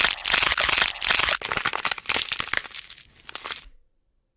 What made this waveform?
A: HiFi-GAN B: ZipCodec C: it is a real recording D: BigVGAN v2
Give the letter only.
C